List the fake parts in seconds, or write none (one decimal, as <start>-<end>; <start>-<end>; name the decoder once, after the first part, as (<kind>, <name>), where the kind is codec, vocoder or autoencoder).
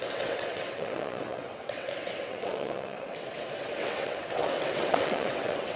0.0-5.8 (vocoder, WaveNeXt)